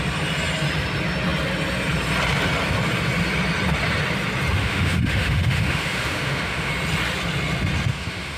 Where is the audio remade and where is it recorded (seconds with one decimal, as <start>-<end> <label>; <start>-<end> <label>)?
0.0-4.6 recorded; 4.6-6.7 remade; 6.7-7.9 recorded; 7.9-8.4 remade